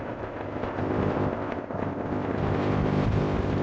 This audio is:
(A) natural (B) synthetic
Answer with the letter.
B